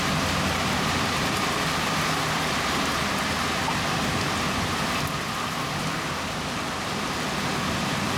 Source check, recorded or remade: recorded